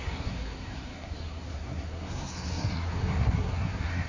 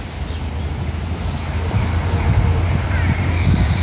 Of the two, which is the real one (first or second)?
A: second